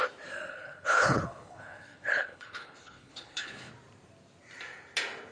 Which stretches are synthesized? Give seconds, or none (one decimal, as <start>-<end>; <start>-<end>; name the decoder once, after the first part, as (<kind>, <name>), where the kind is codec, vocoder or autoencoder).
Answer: 0.5-3.7 (codec, HILCodec)